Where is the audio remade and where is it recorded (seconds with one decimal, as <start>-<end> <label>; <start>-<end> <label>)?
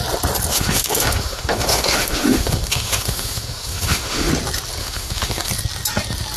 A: 0.0-0.5 recorded; 0.5-4.3 remade; 4.3-4.8 recorded; 4.8-5.5 remade; 5.5-6.4 recorded